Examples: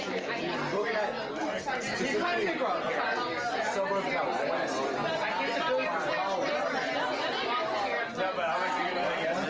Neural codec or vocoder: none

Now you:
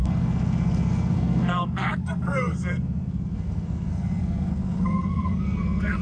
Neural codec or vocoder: codec, SNAC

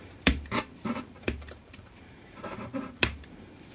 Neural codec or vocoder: vocoder, BigVGAN v2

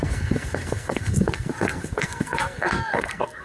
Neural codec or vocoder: codec, SNAC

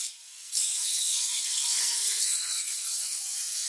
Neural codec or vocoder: codec, SNAC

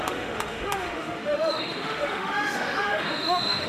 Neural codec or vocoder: autoencoder, DAC-VAE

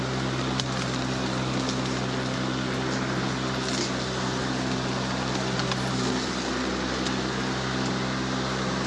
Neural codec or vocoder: none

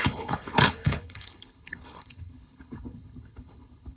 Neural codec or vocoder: codec, HILCodec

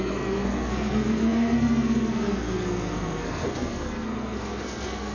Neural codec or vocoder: codec, SNAC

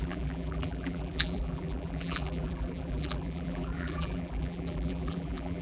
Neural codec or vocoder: vocoder, BigVGAN v2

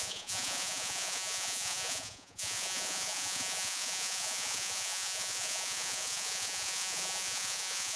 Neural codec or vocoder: vocoder, Vocos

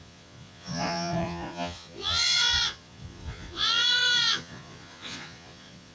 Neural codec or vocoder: vocoder, Vocos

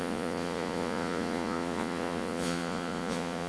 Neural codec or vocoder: vocoder, Vocos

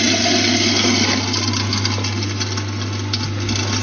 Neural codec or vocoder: none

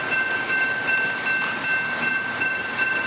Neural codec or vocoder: none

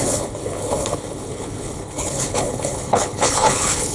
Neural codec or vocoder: codec, HILCodec